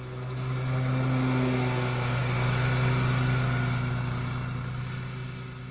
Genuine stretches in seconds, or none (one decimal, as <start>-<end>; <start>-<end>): 0.0-5.7